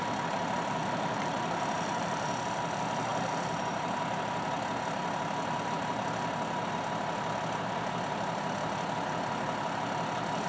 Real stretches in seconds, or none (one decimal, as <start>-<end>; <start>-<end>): 0.0-0.8; 2.0-10.5